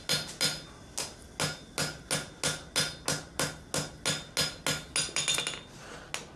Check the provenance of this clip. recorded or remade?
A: recorded